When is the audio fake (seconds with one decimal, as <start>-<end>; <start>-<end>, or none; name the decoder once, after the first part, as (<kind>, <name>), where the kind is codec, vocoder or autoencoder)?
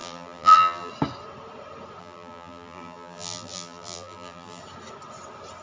0.0-0.9 (vocoder, BigVGAN v2); 2.0-4.6